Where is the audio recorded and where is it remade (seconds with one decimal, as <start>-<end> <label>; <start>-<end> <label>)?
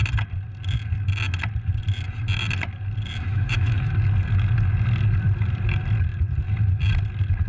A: 0.0-3.3 recorded; 3.3-3.9 remade; 3.9-7.5 recorded